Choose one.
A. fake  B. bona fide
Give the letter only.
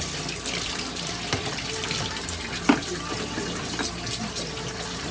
B